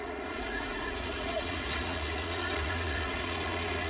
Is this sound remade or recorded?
remade